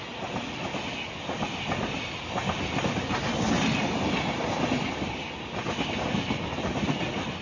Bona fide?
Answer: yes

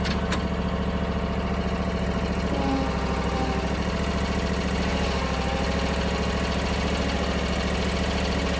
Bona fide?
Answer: yes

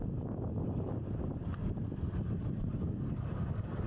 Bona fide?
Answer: yes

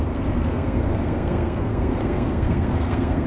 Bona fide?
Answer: no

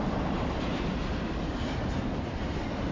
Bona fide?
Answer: no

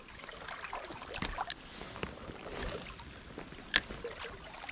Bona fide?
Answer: yes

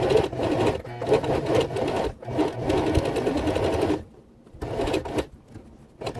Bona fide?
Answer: yes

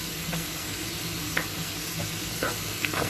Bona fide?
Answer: no